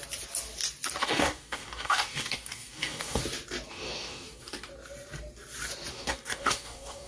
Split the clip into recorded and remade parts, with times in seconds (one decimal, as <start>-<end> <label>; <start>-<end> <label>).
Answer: 0.0-1.0 recorded; 1.0-3.2 remade; 3.2-3.7 recorded; 3.7-4.7 remade; 4.7-5.9 recorded; 5.9-7.1 remade